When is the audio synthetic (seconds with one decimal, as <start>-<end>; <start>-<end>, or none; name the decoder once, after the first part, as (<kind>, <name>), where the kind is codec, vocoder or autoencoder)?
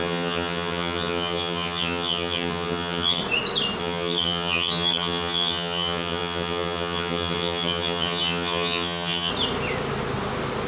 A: 0.0-3.2 (vocoder, HiFi-GAN); 3.8-9.3